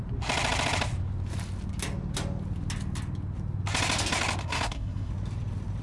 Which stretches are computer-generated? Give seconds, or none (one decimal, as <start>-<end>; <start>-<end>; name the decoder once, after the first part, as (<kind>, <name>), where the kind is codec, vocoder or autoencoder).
4.4-5.1 (codec, SNAC)